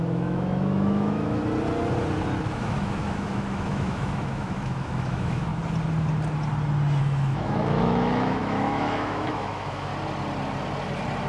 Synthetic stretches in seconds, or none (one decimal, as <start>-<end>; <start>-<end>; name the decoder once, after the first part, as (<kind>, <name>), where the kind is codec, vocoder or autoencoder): 0.0-1.4 (autoencoder, DAC-VAE); 2.5-5.5; 7.0-9.9

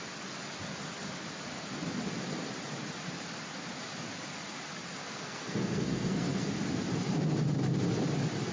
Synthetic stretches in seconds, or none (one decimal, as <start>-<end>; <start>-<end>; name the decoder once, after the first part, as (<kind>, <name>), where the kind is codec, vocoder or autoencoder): 5.0-6.5 (codec, SNAC)

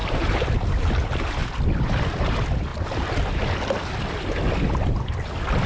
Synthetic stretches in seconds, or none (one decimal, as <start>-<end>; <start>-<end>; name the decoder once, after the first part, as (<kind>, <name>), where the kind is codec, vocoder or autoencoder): 0.0-0.5 (vocoder, BigVGAN v2)

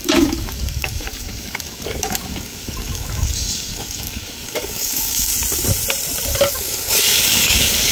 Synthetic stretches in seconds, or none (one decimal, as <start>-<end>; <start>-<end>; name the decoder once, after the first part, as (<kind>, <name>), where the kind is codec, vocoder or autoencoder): 0.0-5.3 (codec, DAC); 6.5-7.9

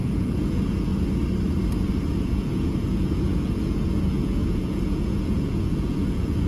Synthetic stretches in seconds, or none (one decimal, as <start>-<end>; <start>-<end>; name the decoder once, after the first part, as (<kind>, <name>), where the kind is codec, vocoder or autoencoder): 0.0-0.9 (vocoder, Vocos); 2.1-6.5